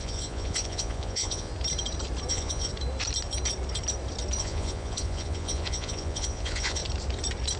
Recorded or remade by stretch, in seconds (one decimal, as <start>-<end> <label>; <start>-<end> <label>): 0.0-1.5 remade; 1.5-2.3 recorded; 2.3-2.7 remade; 2.7-4.4 recorded; 4.4-6.8 remade; 6.8-7.6 recorded